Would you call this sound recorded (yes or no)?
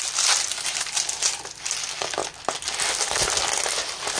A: yes